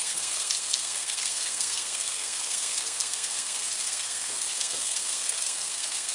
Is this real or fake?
fake